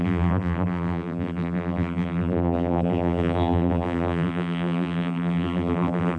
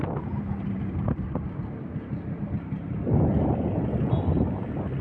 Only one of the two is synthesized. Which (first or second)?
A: first